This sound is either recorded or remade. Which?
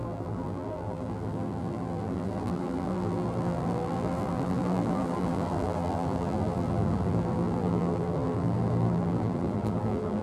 remade